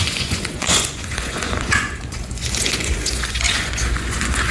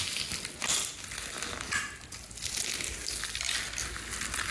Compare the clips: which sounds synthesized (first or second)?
first